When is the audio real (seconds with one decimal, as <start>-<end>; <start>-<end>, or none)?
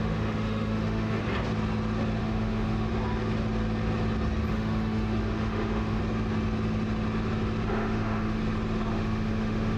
1.2-2.2; 2.9-4.5; 6.0-7.7; 8.4-8.9